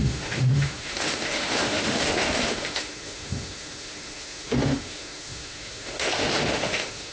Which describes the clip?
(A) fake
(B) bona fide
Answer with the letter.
A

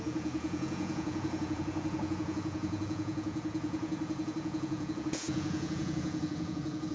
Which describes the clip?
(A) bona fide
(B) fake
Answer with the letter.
B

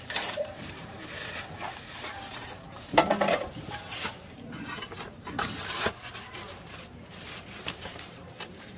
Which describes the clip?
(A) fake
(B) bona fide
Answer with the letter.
A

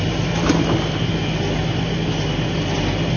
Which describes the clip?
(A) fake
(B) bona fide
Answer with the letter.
B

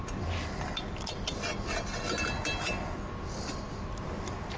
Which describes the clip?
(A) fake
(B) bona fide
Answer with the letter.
B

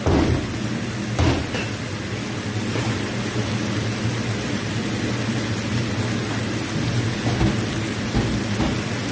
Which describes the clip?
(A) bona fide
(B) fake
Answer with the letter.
A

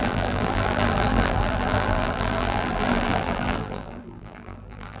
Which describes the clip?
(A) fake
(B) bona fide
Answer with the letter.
A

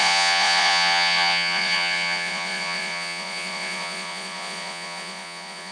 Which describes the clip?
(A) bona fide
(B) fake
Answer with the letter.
B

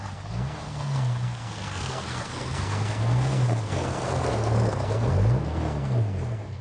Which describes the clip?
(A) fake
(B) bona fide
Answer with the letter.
A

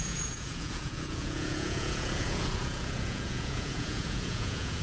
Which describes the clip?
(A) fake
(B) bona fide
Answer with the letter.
A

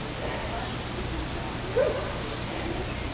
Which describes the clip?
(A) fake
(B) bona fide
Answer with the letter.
B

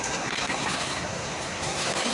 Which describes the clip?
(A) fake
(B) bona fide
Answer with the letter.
A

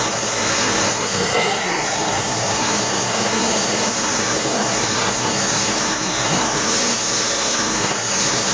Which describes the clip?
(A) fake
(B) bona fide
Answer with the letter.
A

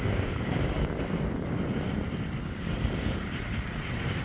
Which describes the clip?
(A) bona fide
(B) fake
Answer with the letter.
A